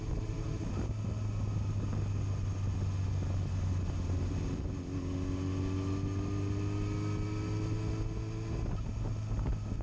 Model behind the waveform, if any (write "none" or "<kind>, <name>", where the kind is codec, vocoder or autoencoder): none